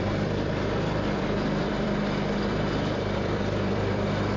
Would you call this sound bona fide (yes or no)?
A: no